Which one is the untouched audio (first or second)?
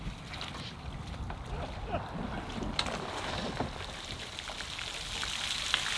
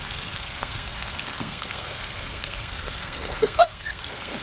first